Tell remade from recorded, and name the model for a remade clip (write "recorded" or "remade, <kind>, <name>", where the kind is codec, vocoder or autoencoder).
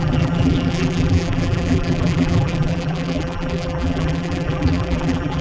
remade, vocoder, BigVGAN v2